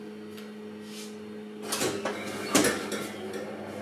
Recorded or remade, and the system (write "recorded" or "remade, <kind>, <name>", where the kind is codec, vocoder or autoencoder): recorded